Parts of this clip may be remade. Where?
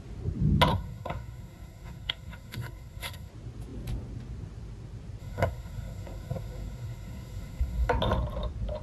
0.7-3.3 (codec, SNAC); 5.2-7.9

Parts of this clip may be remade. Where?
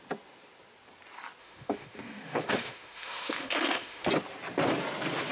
1.4-4.1 (autoencoder, DAC-VAE)